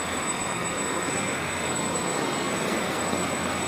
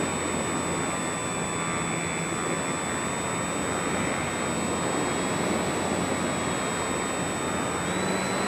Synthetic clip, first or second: first